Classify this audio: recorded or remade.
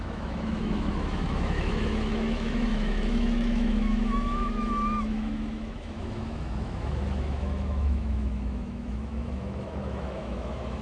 remade